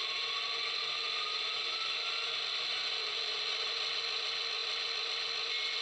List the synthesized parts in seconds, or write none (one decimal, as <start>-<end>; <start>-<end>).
none